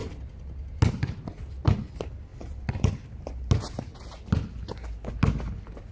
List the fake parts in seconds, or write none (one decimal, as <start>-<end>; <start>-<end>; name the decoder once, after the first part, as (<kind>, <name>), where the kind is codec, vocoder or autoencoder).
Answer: none